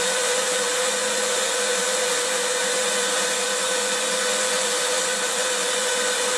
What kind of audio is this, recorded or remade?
remade